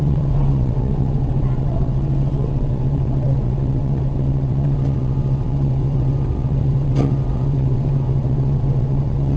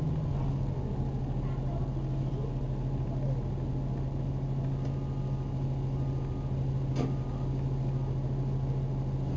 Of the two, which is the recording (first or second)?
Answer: second